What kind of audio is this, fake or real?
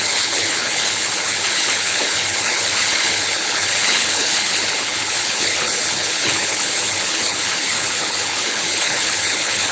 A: fake